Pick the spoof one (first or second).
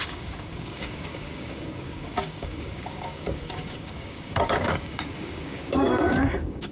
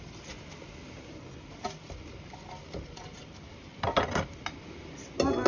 first